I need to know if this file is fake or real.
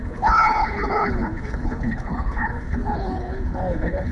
fake